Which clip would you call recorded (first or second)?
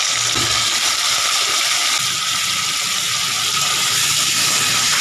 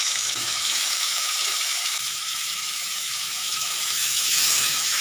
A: first